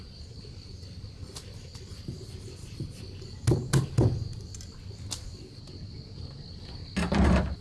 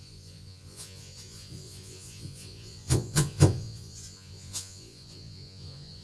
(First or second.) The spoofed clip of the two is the second